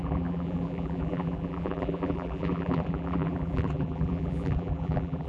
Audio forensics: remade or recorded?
remade